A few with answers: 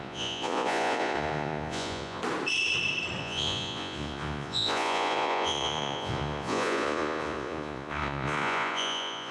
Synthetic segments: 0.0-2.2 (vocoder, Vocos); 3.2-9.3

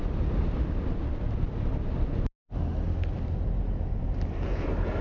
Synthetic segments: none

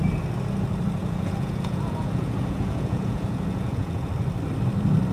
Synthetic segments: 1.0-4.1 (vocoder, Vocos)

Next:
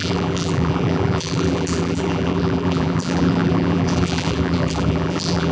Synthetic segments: 0.0-5.5 (vocoder, BigVGAN v2)